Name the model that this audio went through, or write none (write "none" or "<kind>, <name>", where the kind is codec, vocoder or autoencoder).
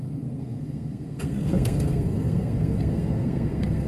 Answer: codec, SNAC